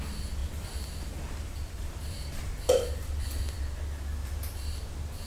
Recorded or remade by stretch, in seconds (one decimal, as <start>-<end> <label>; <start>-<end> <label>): 0.0-0.4 recorded; 0.4-3.6 remade; 3.6-5.3 recorded